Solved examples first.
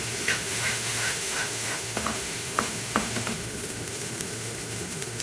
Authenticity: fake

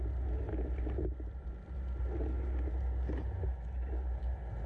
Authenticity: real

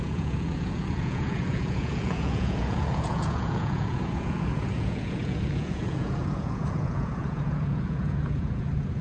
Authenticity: fake